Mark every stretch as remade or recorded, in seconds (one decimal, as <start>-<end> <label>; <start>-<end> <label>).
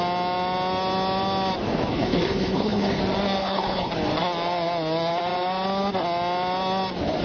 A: 0.0-1.9 recorded; 1.9-3.0 remade; 3.0-3.4 recorded; 3.4-3.9 remade; 3.9-7.2 recorded